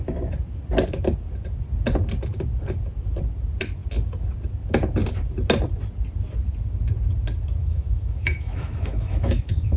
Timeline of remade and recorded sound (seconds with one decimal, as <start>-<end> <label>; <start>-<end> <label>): 0.0-7.6 recorded; 7.6-9.8 remade

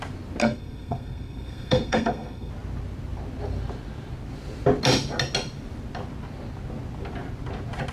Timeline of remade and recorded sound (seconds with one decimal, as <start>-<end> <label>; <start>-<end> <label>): 0.0-0.4 recorded; 0.4-2.5 remade; 2.5-7.9 recorded

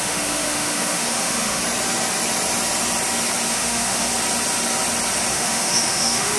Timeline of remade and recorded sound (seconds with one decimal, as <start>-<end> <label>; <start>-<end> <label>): 0.0-1.6 remade; 1.6-3.5 recorded; 3.5-4.1 remade; 4.1-5.3 recorded; 5.3-6.4 remade

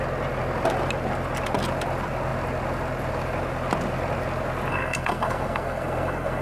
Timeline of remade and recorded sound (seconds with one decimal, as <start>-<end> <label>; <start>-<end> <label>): 0.0-4.7 recorded; 4.7-6.4 remade

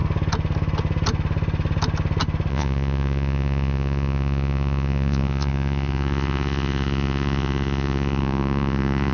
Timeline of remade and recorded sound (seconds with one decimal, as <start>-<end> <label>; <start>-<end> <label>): 0.0-2.5 recorded; 2.5-9.1 remade